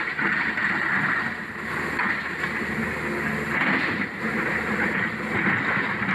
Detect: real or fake real